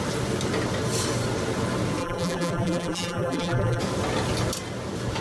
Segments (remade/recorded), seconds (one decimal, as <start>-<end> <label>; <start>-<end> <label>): 0.0-2.0 recorded; 2.0-3.8 remade; 3.8-5.2 recorded